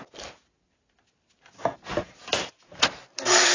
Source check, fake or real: real